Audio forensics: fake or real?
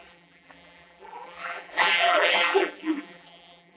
fake